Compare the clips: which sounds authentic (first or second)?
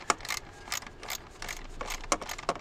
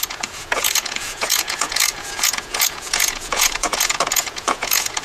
first